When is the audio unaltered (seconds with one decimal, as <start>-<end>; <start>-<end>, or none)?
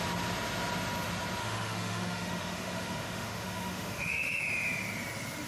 0.0-1.4; 4.4-5.5